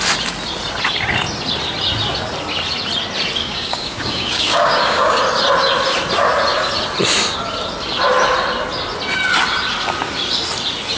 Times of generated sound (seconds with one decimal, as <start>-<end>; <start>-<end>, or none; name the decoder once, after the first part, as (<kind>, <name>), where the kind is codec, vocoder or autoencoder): 3.4-5.2 (codec, DAC)